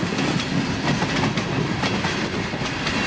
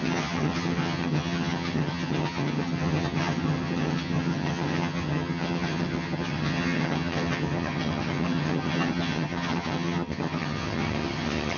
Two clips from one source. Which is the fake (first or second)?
second